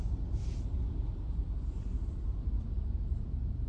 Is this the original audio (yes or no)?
no